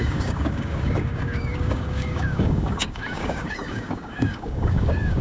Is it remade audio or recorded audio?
remade